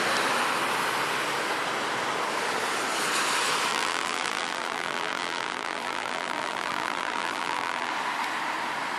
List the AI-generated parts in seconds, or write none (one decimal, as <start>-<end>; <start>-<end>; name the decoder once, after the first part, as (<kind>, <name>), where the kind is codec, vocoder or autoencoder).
3.7-7.9 (vocoder, BigVGAN v2)